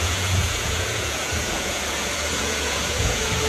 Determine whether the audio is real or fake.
fake